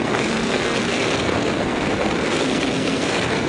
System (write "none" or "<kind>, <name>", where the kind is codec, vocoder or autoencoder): codec, SNAC